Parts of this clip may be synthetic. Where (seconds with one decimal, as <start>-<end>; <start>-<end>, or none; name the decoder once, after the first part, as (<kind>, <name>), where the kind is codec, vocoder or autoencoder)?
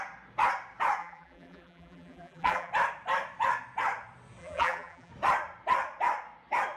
1.0-2.7 (vocoder, BigVGAN v2); 4.4-5.1